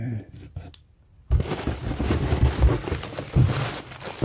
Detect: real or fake real